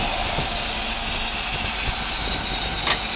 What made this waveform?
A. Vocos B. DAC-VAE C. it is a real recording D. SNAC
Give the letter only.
C